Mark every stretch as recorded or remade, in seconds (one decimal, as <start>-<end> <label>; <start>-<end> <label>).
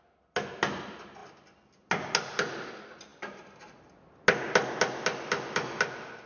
0.0-6.3 recorded